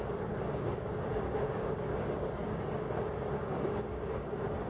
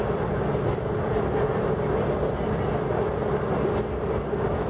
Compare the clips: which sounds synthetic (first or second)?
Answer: first